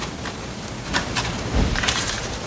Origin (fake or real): fake